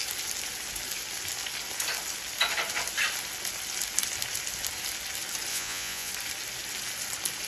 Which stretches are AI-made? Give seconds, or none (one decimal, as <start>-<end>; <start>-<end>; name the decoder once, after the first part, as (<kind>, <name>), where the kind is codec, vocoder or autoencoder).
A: 5.5-6.1 (vocoder, Vocos)